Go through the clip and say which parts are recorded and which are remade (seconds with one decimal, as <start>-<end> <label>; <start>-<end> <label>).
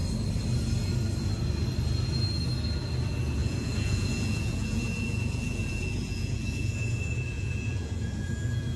0.0-3.4 recorded; 3.4-8.8 remade